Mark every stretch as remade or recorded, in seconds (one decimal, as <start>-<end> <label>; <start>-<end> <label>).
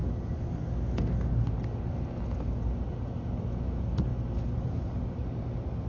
0.0-3.5 recorded; 3.5-4.1 remade; 4.1-4.6 recorded; 4.6-5.2 remade; 5.2-5.9 recorded